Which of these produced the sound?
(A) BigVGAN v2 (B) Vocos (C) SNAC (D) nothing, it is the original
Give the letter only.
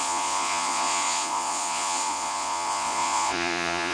B